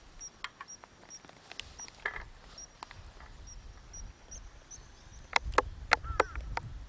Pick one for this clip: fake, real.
real